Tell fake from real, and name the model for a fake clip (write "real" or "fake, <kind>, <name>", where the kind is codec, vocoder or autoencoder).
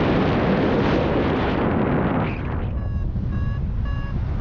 real